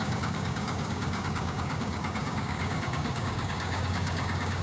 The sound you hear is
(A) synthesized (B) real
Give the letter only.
A